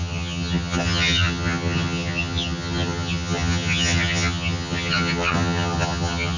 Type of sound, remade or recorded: remade